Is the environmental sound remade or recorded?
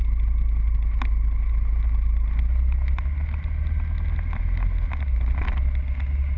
recorded